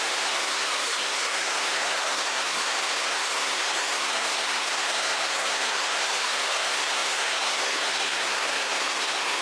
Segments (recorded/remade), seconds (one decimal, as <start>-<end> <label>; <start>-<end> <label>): 0.0-9.4 remade